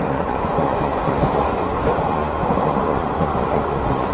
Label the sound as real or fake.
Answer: fake